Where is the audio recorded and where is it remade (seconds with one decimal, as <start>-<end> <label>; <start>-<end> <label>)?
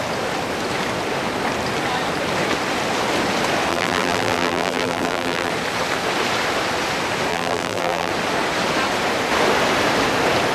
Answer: 0.0-3.7 recorded; 3.7-5.5 remade; 5.5-7.3 recorded; 7.3-8.1 remade; 8.1-10.5 recorded